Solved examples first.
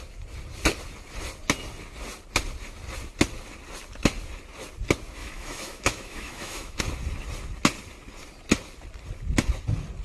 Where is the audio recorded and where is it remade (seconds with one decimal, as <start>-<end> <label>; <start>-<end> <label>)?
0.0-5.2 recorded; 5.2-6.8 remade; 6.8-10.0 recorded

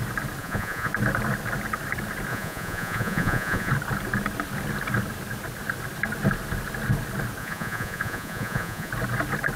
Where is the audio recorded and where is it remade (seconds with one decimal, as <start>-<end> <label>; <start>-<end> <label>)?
0.0-0.4 recorded; 0.4-0.9 remade; 0.9-2.3 recorded; 2.3-3.7 remade; 3.7-7.4 recorded; 7.4-8.9 remade; 8.9-9.6 recorded

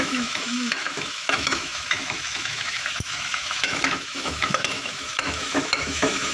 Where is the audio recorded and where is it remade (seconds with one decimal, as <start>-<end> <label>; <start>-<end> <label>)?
0.0-6.3 remade

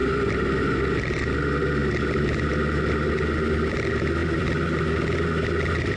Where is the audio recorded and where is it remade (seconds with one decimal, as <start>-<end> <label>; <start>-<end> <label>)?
0.0-4.2 recorded; 4.2-5.0 remade; 5.0-6.0 recorded

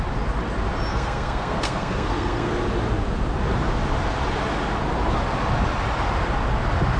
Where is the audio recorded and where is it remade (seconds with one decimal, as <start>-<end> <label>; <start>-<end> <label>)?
0.0-0.9 recorded; 0.9-2.5 remade; 2.5-7.0 recorded

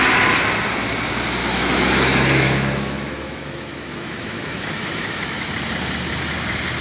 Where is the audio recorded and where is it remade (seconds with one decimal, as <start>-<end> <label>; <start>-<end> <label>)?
0.0-1.4 recorded; 1.4-5.5 remade; 5.5-6.8 recorded